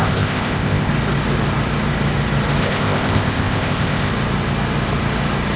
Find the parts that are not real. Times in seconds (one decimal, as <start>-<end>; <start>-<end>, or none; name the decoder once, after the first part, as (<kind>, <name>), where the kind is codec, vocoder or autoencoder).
0.0-0.9 (codec, ZipCodec); 2.6-4.1